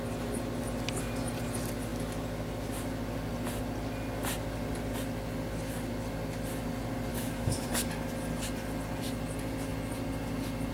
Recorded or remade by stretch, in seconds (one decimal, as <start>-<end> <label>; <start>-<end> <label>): 0.0-7.1 recorded; 7.1-7.7 remade; 7.7-10.7 recorded